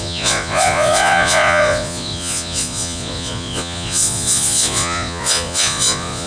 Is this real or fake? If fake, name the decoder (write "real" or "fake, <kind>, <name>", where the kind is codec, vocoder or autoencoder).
fake, vocoder, Vocos